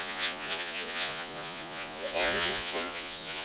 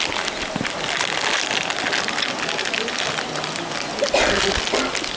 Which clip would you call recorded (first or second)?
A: second